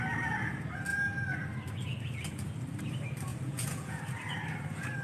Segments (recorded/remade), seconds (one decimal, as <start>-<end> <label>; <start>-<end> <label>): 0.0-3.3 recorded; 3.3-4.0 remade; 4.0-5.0 recorded